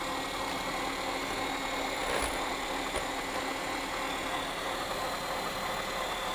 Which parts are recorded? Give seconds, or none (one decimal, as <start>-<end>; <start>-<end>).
0.0-2.0; 3.2-6.3